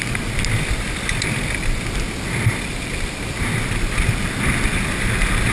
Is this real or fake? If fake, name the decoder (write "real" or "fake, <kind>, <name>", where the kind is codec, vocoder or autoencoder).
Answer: real